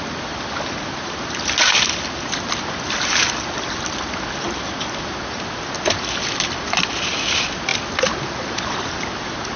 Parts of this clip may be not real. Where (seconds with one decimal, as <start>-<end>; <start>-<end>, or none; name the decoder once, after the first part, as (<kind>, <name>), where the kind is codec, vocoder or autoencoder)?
none